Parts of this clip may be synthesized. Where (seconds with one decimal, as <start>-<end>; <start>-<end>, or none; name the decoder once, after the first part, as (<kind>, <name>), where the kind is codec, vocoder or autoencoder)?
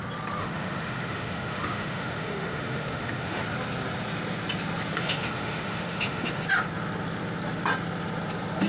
0.4-3.4 (autoencoder, DAC-VAE); 4.9-6.4